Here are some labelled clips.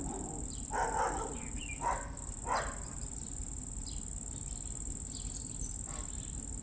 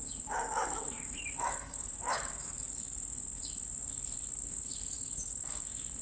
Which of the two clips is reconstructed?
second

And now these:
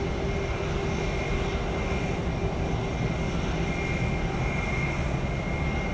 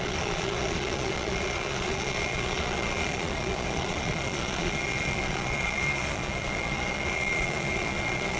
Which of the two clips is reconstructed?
second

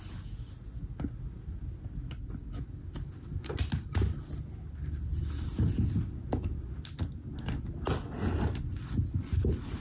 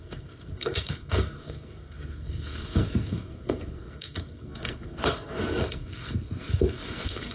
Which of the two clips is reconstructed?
second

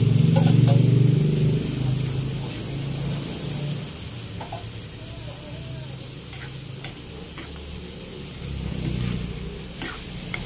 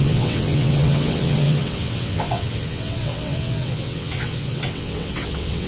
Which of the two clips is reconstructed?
second